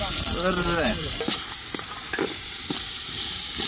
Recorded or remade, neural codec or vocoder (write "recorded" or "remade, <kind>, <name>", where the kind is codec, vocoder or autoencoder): remade, vocoder, BigVGAN v2